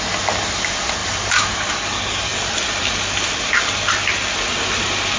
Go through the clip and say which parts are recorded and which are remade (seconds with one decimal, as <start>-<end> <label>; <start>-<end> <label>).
0.0-1.0 recorded; 1.0-1.7 remade; 1.7-5.2 recorded